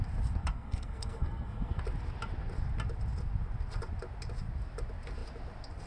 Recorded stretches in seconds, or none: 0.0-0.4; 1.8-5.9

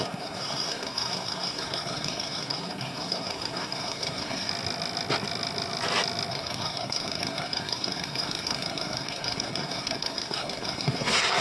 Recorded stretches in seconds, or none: 4.5-6.3